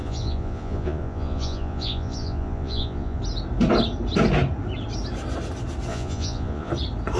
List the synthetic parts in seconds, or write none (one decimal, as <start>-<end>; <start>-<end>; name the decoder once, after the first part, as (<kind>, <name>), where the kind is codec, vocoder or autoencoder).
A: 0.0-3.2 (vocoder, Vocos); 5.9-6.7